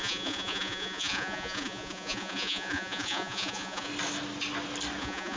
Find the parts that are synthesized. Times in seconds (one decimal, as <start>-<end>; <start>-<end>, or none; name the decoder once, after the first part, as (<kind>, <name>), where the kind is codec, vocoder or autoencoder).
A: 0.0-3.9 (vocoder, Vocos); 5.0-5.4